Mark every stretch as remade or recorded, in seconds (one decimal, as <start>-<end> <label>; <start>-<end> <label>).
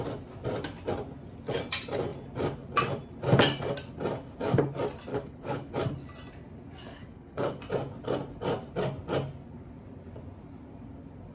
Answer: 0.0-5.1 recorded; 5.1-5.7 remade; 5.7-6.9 recorded; 6.9-7.6 remade; 7.6-11.3 recorded